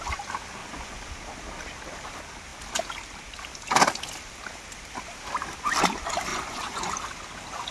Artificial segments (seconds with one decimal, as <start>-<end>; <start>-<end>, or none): 0.6-1.1; 6.3-6.9